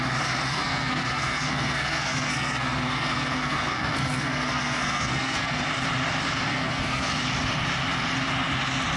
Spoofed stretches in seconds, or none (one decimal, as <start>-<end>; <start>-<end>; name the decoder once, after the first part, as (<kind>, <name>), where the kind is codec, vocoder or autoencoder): 0.5-5.6 (codec, SNAC); 6.5-7.1